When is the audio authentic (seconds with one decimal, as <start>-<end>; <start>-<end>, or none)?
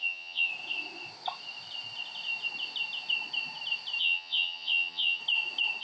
0.5-4.0; 5.2-5.8